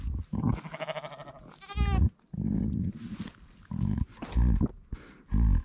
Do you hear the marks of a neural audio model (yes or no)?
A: no